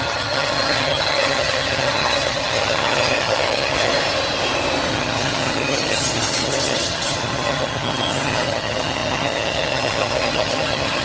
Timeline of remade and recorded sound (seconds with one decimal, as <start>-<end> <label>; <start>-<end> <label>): 0.0-3.9 remade; 3.9-4.9 recorded; 4.9-11.0 remade